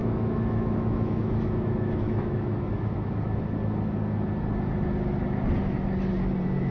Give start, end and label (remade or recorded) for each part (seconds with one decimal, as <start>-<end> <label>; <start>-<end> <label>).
0.0-3.1 remade; 3.1-6.7 recorded